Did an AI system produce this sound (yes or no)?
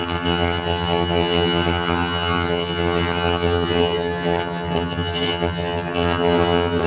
yes